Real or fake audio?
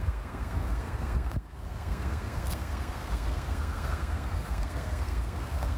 fake